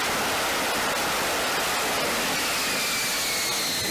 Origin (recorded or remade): recorded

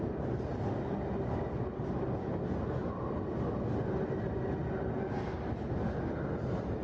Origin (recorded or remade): recorded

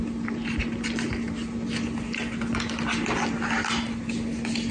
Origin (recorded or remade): recorded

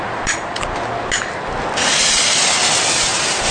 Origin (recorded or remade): recorded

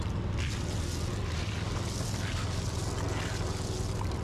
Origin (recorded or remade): recorded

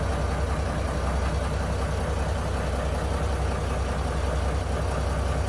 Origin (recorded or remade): recorded